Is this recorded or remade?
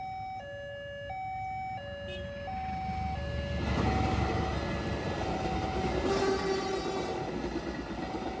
recorded